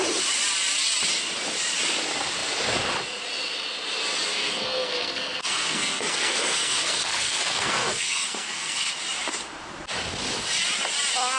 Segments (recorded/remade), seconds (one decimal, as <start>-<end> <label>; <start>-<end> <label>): 0.0-4.3 recorded; 4.3-8.9 remade; 8.9-11.4 recorded